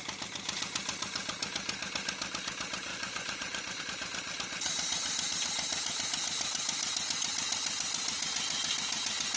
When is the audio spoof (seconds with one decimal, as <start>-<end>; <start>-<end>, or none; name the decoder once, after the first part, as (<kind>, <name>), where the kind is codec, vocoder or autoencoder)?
2.9-3.8 (vocoder, Vocos)